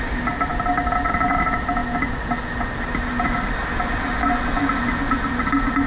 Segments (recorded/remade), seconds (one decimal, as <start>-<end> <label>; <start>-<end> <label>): 0.0-5.9 recorded